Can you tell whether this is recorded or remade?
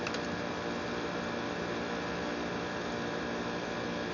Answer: recorded